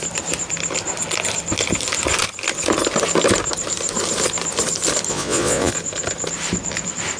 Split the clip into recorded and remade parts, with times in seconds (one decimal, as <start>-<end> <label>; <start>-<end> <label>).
0.0-5.1 recorded; 5.1-5.7 remade; 5.7-7.2 recorded

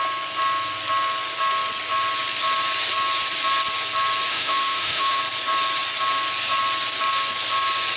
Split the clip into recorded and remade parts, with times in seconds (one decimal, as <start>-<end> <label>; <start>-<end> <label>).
0.0-4.3 recorded; 4.3-5.2 remade; 5.2-8.0 recorded

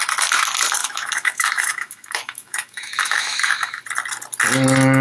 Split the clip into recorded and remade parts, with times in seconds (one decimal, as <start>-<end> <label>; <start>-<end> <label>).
0.0-0.8 recorded; 0.8-3.8 remade; 3.8-5.0 recorded